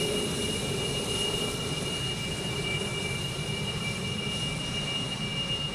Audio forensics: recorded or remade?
recorded